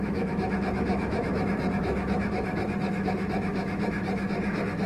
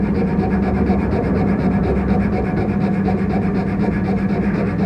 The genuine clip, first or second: second